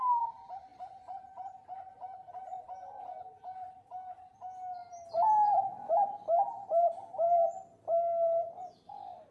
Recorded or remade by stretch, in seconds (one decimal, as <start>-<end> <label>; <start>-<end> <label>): 0.0-4.8 recorded; 4.8-5.3 remade; 5.3-5.7 recorded; 5.7-7.8 remade; 7.8-9.3 recorded